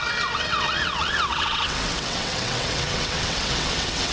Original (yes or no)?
no